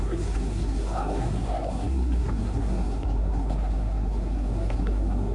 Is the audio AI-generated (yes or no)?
yes